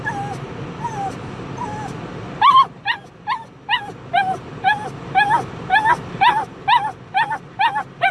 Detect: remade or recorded recorded